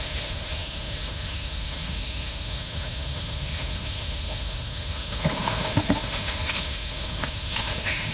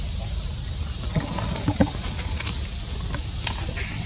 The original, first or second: second